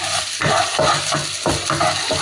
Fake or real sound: real